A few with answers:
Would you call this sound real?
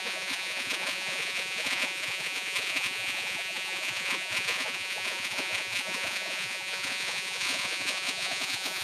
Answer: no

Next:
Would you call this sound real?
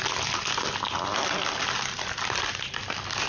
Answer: yes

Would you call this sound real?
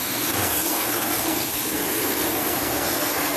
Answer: no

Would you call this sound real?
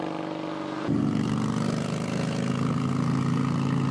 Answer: yes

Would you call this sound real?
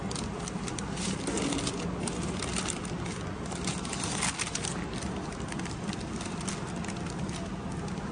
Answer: yes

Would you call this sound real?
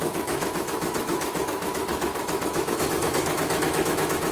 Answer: no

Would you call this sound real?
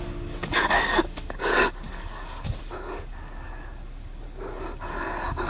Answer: no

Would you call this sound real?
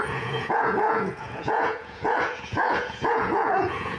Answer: no